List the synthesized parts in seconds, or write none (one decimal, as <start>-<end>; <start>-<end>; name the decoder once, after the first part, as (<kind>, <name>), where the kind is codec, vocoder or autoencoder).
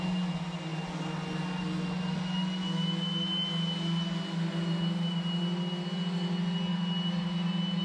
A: none